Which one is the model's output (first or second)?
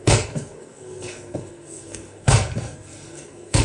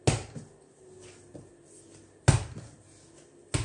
first